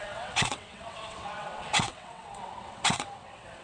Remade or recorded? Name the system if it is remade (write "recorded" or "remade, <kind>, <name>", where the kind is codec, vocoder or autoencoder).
remade, vocoder, WaveNeXt